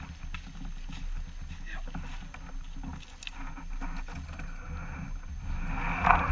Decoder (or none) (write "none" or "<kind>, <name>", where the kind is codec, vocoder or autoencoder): none